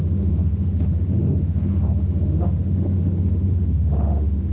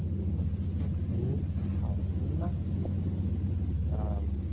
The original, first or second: second